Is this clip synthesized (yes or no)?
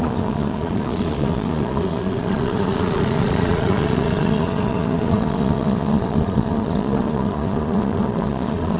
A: yes